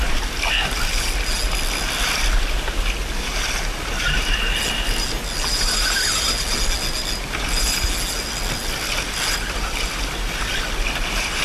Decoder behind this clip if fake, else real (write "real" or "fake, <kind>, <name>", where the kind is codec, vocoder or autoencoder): real